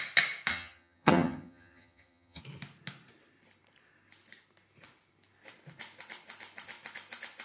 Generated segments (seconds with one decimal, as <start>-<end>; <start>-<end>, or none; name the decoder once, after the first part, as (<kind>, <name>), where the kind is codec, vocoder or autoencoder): 0.5-2.4 (vocoder, HiFi-GAN)